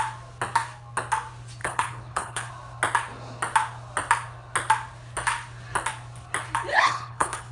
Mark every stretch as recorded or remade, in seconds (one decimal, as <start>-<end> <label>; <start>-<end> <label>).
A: 0.0-1.6 recorded; 1.6-2.5 remade; 2.5-6.7 recorded; 6.7-7.5 remade